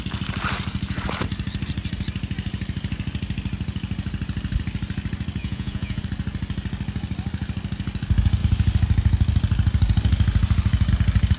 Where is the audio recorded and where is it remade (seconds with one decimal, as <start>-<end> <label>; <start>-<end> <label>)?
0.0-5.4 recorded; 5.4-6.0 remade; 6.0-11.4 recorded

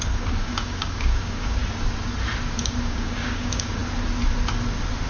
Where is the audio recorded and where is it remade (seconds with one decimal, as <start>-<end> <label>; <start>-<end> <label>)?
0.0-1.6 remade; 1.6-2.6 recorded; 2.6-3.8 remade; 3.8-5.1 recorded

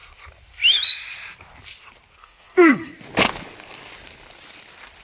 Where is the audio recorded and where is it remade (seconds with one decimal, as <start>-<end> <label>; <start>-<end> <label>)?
0.0-2.2 recorded; 2.2-2.9 remade; 2.9-5.0 recorded

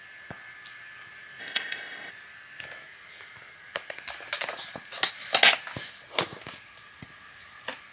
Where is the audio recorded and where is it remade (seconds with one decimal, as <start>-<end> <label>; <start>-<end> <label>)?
0.0-1.4 recorded; 1.4-2.1 remade; 2.1-7.9 recorded

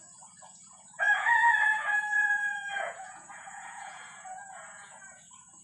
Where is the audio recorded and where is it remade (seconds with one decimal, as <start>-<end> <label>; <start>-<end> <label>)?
0.0-5.6 remade

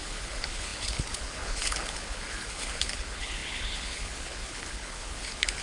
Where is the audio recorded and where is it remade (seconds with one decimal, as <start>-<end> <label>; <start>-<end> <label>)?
0.0-5.6 remade

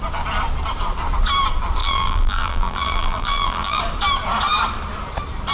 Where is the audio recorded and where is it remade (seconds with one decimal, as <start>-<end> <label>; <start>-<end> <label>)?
0.0-1.8 recorded; 1.8-3.8 remade; 3.8-5.5 recorded

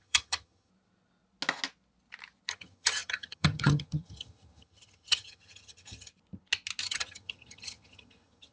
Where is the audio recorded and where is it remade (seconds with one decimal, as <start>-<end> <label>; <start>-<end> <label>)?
0.0-0.7 remade; 0.7-2.5 recorded; 2.5-6.1 remade; 6.1-6.8 recorded; 6.8-8.5 remade